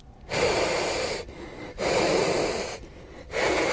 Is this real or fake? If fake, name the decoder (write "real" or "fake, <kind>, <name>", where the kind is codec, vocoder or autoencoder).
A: real